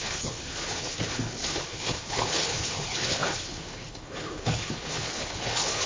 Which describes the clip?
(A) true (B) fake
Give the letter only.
B